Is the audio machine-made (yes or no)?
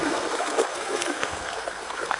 yes